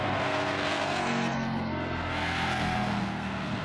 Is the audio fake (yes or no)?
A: yes